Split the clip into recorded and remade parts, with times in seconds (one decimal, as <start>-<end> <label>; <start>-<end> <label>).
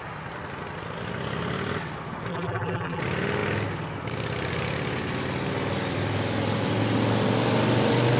0.0-2.3 recorded; 2.3-3.0 remade; 3.0-8.2 recorded